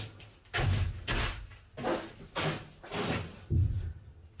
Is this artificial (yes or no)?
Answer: no